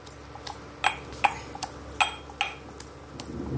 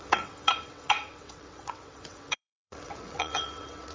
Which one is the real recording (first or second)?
first